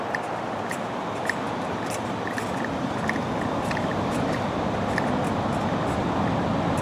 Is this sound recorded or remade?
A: recorded